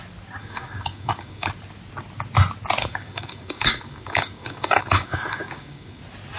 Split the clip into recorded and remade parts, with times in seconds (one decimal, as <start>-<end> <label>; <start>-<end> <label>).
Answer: 0.0-0.4 recorded; 0.4-1.5 remade; 1.5-2.8 recorded; 2.8-6.0 remade; 6.0-6.4 recorded